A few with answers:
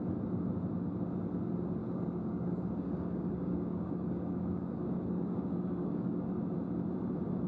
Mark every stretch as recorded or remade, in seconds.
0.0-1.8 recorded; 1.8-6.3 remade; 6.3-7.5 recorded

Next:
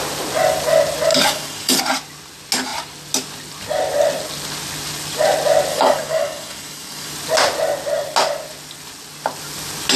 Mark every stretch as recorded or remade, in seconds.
0.0-1.1 recorded; 1.1-1.8 remade; 1.8-5.7 recorded; 5.7-7.1 remade; 7.1-10.0 recorded

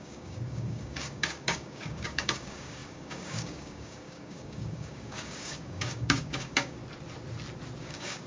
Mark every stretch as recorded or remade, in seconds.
0.0-6.8 remade; 6.8-7.8 recorded; 7.8-8.3 remade